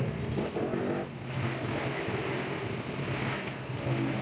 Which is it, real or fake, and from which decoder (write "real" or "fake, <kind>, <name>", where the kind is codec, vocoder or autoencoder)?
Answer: real